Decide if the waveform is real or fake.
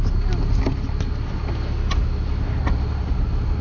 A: real